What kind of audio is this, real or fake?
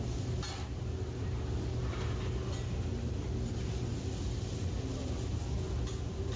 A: real